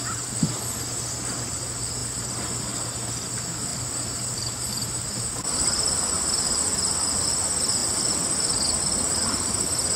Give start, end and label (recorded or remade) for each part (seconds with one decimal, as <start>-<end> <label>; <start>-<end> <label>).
0.0-3.7 recorded; 3.7-6.6 remade; 6.6-7.8 recorded; 7.8-9.5 remade; 9.5-10.0 recorded